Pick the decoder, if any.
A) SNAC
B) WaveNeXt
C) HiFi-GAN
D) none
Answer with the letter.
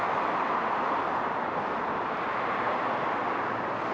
D